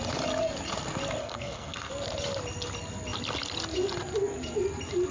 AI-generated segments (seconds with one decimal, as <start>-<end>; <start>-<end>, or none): 1.2-1.9